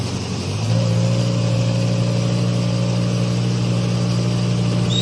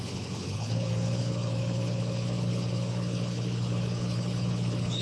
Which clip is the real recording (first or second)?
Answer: first